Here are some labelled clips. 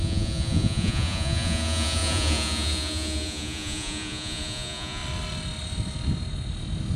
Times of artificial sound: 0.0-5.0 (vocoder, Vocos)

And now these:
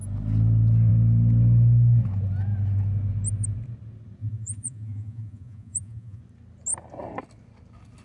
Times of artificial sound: 4.2-6.2 (vocoder, Vocos)

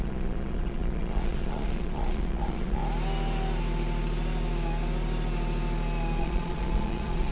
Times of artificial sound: 0.0-2.8 (vocoder, Vocos); 6.2-7.3

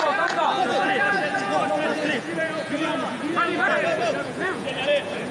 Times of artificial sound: 0.0-5.3 (vocoder, Vocos)

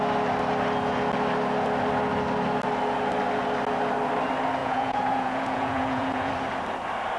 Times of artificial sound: 4.6-6.3 (vocoder, Vocos)